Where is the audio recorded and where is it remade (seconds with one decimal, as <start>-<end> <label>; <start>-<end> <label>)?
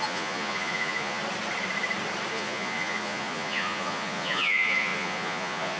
0.0-1.2 remade; 1.2-2.3 recorded; 2.3-5.8 remade